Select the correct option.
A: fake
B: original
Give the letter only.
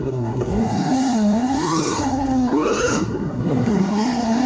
A